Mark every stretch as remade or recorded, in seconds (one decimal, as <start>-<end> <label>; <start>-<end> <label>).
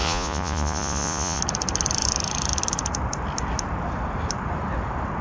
0.0-1.4 remade; 1.4-5.2 recorded